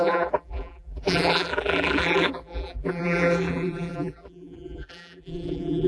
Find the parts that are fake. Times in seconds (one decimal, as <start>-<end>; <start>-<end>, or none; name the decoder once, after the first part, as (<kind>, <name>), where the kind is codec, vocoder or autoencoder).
0.0-5.9 (vocoder, BigVGAN v2)